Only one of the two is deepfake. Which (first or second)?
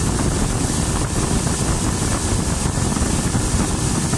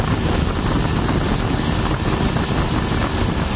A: first